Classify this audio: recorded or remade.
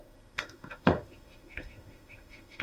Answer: remade